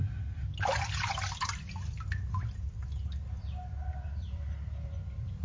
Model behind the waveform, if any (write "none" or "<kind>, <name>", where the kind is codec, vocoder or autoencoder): none